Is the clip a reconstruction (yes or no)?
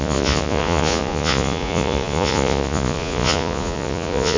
yes